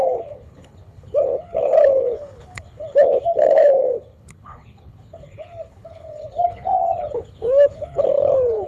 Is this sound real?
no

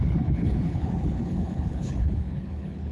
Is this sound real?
no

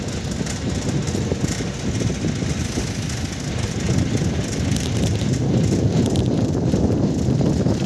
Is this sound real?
yes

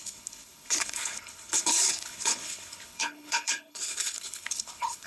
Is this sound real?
no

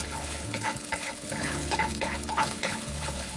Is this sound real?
no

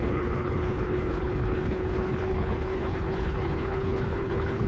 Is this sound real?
no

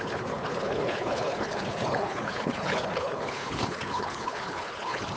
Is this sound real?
no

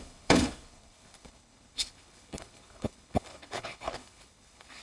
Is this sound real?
no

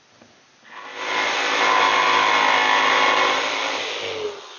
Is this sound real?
yes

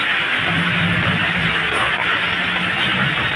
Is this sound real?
yes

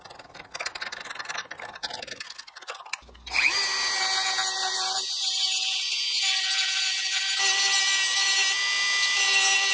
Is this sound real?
yes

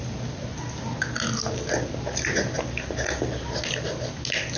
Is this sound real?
yes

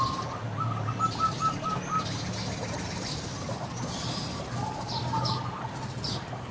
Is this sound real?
yes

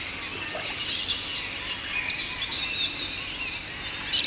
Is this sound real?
yes